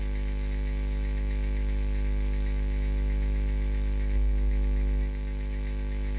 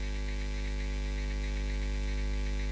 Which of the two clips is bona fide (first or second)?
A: second